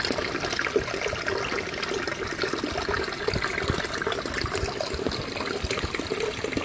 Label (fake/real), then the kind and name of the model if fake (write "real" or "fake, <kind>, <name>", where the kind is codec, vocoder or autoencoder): real